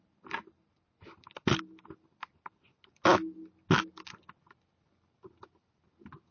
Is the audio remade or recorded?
recorded